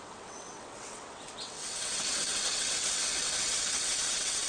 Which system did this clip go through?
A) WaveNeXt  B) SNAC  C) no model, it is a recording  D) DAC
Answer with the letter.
A